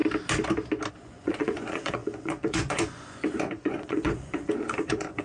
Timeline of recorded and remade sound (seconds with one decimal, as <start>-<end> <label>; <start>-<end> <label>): 0.0-0.9 recorded; 0.9-5.2 remade